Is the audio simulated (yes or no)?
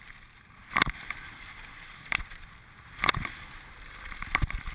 no